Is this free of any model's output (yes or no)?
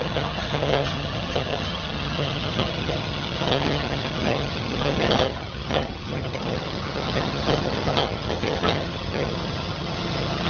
no